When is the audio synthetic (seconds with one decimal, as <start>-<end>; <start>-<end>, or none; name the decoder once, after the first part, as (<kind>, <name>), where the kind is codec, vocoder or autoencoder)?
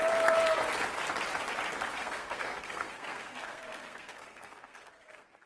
1.9-5.5 (codec, SNAC)